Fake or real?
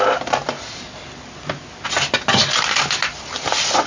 real